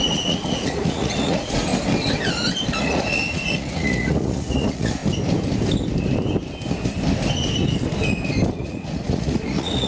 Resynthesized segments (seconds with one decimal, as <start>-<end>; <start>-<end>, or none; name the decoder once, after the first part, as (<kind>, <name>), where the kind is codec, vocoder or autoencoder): 0.0-1.7 (vocoder, Vocos); 2.8-5.0; 8.5-9.9

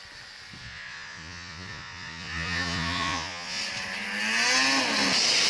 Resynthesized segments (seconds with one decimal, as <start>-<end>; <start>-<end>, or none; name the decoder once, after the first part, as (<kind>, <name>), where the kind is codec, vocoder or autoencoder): 0.6-3.6 (vocoder, Vocos)